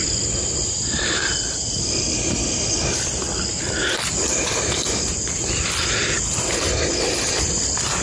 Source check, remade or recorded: recorded